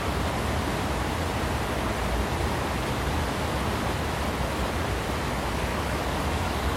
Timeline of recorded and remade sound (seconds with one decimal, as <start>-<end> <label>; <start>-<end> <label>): 0.0-5.7 recorded; 5.7-6.8 remade